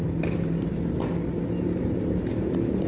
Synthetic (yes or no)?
no